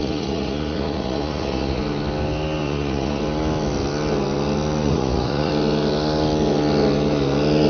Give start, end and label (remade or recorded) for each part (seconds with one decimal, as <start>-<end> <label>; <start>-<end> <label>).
0.0-1.8 remade; 1.8-2.6 recorded; 2.6-3.2 remade; 3.2-4.8 recorded; 4.8-5.5 remade; 5.5-7.7 recorded